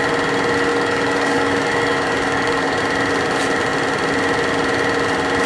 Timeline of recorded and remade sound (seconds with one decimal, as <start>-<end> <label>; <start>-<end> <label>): 0.0-0.7 recorded; 0.7-2.8 remade; 2.8-5.5 recorded